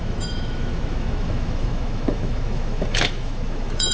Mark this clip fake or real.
fake